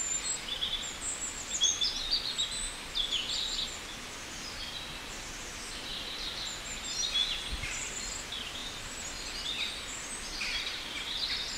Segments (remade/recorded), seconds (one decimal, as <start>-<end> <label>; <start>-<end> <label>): 0.0-8.6 recorded; 8.6-9.7 remade; 9.7-11.6 recorded